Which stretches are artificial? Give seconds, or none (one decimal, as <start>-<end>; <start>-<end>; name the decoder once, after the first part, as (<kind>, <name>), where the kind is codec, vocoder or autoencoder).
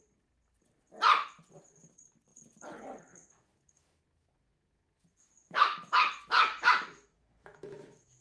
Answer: 3.2-8.2 (autoencoder, DAC-VAE)